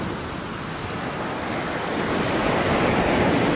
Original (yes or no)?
yes